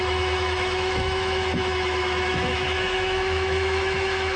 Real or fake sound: fake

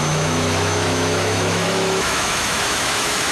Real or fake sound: fake